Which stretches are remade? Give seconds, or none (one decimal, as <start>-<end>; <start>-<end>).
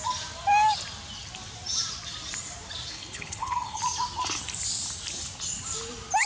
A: 2.9-3.8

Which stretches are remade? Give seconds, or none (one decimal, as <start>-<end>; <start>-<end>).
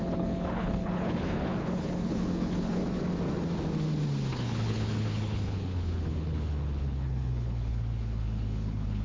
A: 0.0-2.8; 4.3-9.0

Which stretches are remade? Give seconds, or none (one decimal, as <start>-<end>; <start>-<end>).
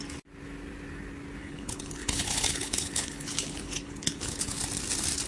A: 1.4-4.6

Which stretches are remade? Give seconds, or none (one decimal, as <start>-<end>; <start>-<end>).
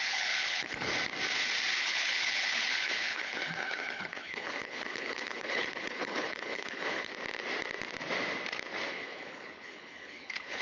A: 0.0-0.9; 1.8-7.1; 8.9-10.6